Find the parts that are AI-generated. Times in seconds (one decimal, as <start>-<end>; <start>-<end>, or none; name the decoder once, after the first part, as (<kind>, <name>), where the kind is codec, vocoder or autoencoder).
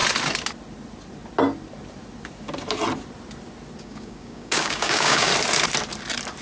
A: 3.8-5.3 (codec, DAC)